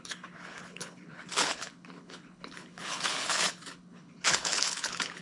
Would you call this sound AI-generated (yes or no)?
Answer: yes